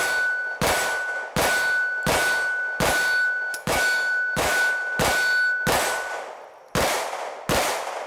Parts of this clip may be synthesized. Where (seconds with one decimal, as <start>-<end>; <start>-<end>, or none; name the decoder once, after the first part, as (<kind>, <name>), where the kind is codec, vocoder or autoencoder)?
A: 3.5-4.7 (autoencoder, DAC-VAE)